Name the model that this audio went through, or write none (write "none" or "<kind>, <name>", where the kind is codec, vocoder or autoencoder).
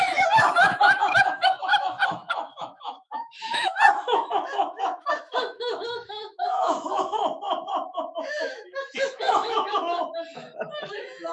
autoencoder, DAC-VAE